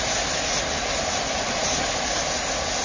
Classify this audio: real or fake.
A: real